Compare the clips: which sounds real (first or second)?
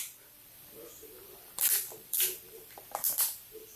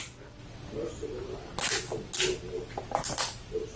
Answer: second